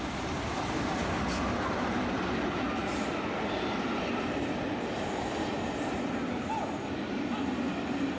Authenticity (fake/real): real